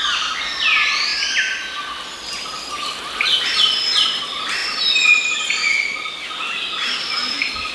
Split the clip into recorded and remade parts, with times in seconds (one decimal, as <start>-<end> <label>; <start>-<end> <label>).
0.0-1.1 remade; 1.1-1.6 recorded; 1.6-7.7 remade

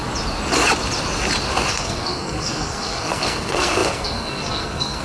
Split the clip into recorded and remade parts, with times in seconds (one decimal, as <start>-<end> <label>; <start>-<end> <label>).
0.0-1.7 recorded; 1.7-5.0 remade

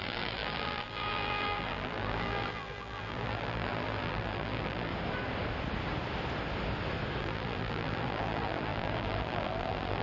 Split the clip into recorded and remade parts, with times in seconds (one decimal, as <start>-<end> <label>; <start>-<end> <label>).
0.0-4.9 remade; 4.9-7.2 recorded; 7.2-10.0 remade

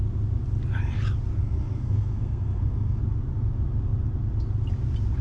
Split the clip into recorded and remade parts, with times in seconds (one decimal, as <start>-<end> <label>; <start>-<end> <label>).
0.0-1.4 recorded; 1.4-3.0 remade; 3.0-5.2 recorded

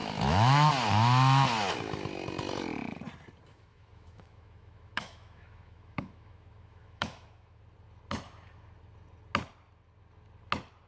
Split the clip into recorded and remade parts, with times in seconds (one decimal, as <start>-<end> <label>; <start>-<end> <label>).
0.0-0.7 remade; 0.7-3.5 recorded; 3.5-7.6 remade; 7.6-10.9 recorded